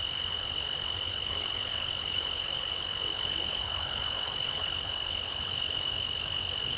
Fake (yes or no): yes